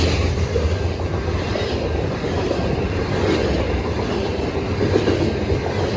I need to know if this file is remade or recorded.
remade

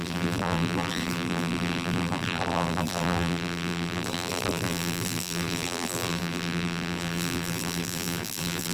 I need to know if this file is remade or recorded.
remade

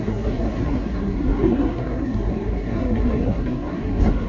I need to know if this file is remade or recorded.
remade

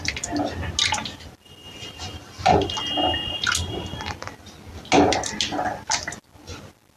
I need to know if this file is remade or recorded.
recorded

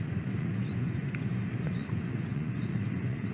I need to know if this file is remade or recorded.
remade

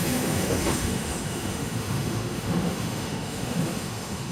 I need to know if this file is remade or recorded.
remade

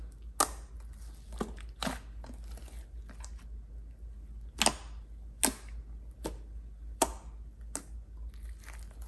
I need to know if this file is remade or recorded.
recorded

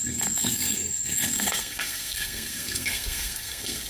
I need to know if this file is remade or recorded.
remade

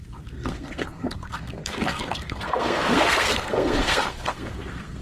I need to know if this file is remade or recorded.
remade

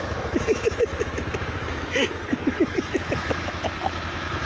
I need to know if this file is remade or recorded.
remade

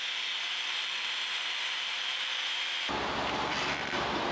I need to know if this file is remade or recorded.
remade